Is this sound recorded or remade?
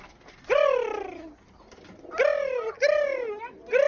recorded